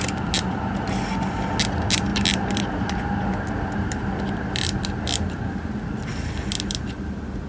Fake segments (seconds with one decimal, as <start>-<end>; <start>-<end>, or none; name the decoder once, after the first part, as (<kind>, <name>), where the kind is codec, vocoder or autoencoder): none